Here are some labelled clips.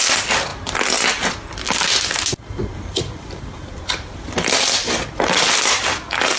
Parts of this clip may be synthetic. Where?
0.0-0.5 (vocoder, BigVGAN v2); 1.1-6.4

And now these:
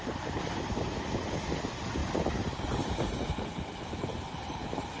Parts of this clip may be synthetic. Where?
2.0-5.0 (vocoder, BigVGAN v2)

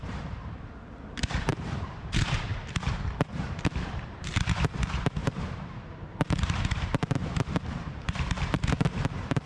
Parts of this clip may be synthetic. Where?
0.0-9.5 (vocoder, BigVGAN v2)